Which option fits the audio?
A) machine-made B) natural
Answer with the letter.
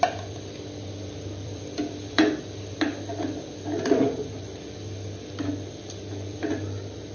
A